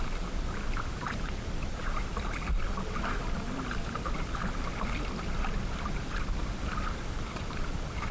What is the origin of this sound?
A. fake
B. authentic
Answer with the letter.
A